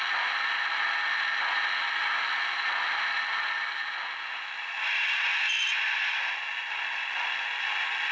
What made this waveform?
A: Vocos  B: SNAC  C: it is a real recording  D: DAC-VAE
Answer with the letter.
C